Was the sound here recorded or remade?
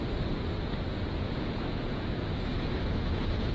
remade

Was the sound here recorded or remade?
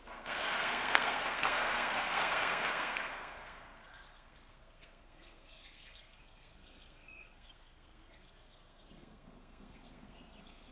remade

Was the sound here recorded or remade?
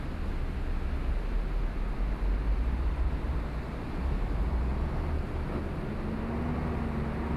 recorded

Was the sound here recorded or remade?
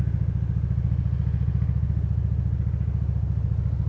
recorded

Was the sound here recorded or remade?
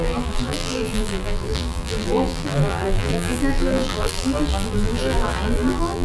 remade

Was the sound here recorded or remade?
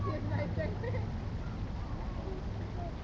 recorded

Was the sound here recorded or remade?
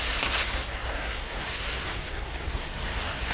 remade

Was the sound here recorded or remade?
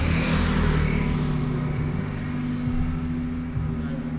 recorded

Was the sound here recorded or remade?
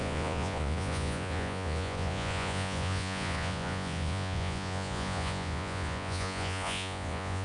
remade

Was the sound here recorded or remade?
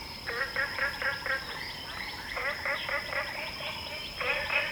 remade